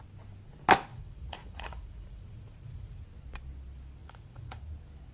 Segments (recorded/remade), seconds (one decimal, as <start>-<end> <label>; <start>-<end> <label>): 0.0-0.9 recorded; 0.9-3.0 remade; 3.0-4.0 recorded; 4.0-4.6 remade; 4.6-5.1 recorded